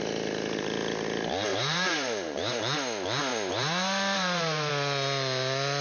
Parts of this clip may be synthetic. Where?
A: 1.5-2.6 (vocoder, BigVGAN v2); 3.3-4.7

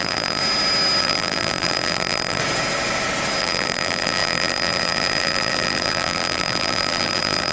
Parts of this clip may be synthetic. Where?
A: 0.0-0.4 (vocoder, BigVGAN v2); 1.0-2.4; 3.4-7.5

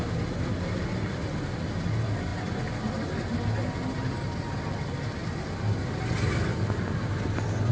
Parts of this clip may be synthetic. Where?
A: none

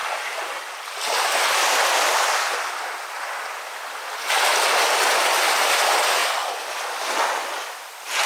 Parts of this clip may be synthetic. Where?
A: 0.0-2.5 (vocoder, BigVGAN v2); 6.2-6.9

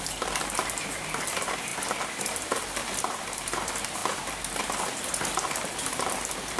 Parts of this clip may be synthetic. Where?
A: 0.0-1.7 (vocoder, BigVGAN v2); 2.3-6.6

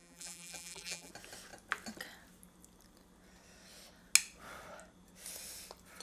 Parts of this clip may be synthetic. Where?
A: 0.0-1.1 (vocoder, BigVGAN v2)